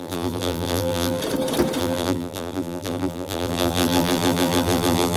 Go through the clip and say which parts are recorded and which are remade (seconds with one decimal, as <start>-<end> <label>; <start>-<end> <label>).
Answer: 0.0-1.2 remade; 1.2-1.8 recorded; 1.8-5.2 remade